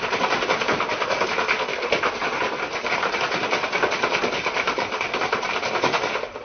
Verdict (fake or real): real